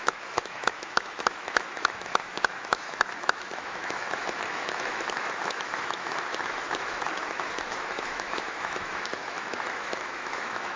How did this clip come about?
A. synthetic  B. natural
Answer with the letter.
A